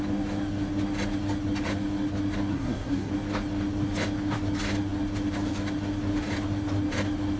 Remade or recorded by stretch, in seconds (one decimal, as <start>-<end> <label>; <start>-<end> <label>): 0.0-2.5 recorded; 2.5-3.1 remade; 3.1-7.4 recorded